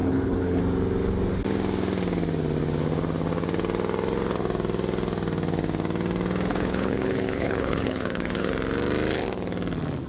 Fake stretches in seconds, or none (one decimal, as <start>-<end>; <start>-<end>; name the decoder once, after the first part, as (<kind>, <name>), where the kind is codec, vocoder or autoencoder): 0.0-0.6 (codec, HILCodec); 6.5-8.5